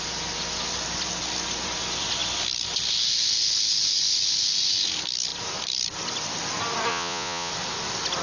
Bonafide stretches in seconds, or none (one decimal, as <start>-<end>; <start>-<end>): 0.0-6.9; 7.5-8.2